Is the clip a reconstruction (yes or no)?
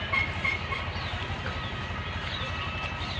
no